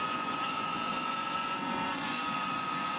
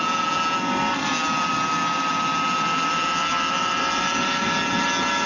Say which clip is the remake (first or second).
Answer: first